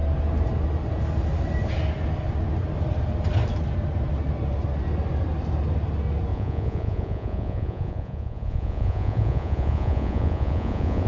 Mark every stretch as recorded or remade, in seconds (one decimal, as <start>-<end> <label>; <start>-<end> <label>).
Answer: 0.0-6.3 recorded; 6.3-11.1 remade